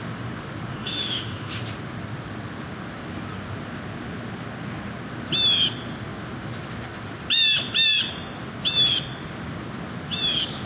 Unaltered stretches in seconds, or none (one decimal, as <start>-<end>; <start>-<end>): 0.0-0.7; 1.6-10.7